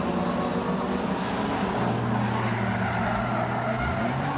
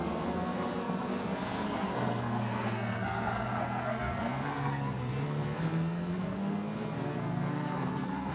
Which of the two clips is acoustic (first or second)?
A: first